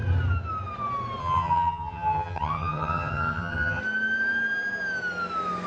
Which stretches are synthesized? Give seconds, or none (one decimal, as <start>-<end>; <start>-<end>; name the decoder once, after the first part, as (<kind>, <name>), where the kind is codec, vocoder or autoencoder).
1.2-3.8 (vocoder, HiFi-GAN)